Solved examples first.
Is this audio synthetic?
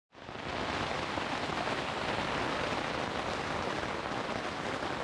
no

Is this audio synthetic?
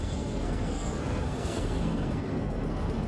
yes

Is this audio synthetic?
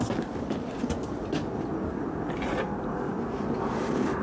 no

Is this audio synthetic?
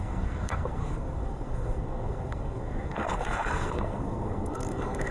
yes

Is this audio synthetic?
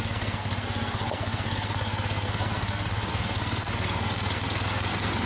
yes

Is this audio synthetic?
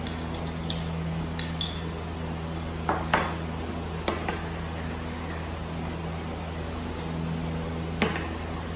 no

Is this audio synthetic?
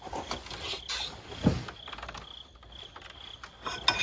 no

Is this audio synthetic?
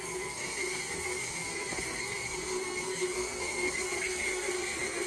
yes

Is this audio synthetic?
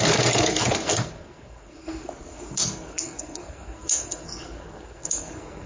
yes